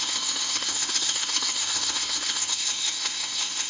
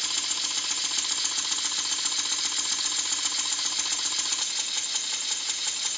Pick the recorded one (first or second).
second